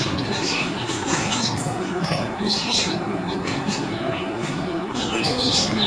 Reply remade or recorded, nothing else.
remade